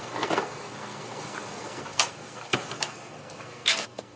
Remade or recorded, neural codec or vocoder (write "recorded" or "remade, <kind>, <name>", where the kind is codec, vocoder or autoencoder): remade, codec, SNAC